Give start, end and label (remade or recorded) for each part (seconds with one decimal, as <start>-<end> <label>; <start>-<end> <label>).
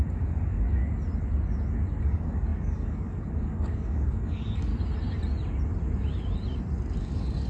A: 0.0-0.8 remade; 0.8-2.0 recorded; 2.0-4.7 remade; 4.7-7.0 recorded; 7.0-7.5 remade